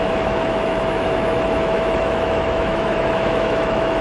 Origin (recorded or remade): remade